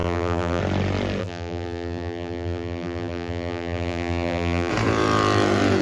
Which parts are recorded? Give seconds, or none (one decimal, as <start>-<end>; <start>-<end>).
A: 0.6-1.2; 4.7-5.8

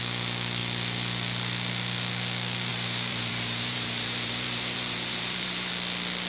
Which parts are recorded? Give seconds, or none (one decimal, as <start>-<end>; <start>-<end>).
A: 0.0-2.7; 5.7-6.3

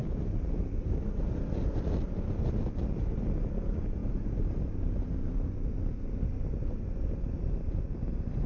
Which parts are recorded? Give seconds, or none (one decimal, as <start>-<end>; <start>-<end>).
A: 0.0-4.0; 5.5-8.5

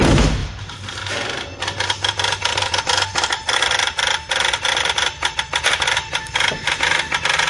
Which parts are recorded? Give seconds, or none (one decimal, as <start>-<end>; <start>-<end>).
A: 0.0-7.5

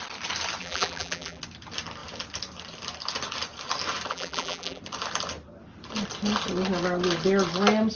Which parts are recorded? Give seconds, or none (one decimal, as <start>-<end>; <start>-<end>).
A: 0.0-0.6; 1.4-4.1; 4.8-8.0